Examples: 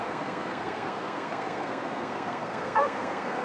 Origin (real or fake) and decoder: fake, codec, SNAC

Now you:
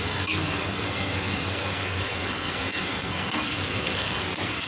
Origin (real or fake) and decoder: fake, codec, SNAC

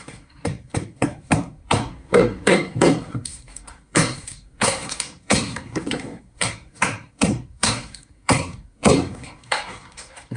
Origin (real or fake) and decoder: fake, codec, SNAC